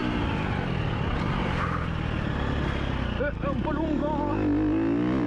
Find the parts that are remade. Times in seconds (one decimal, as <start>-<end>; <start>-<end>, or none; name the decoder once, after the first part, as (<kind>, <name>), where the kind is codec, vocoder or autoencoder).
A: none